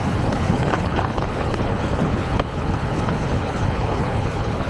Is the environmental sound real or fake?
fake